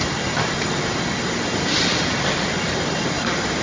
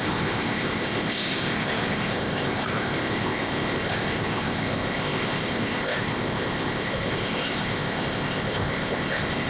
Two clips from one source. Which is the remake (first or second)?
second